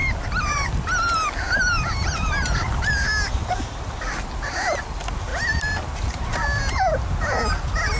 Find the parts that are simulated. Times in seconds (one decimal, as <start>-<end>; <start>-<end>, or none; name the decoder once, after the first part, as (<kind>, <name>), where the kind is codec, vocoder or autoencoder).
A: 0.0-2.8 (vocoder, BigVGAN v2); 5.3-6.1